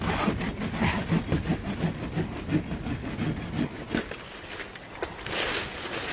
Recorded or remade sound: recorded